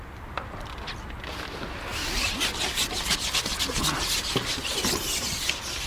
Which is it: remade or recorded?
recorded